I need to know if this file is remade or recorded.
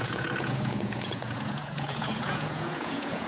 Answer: remade